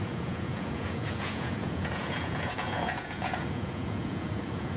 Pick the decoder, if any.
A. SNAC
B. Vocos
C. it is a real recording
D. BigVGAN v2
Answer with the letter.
B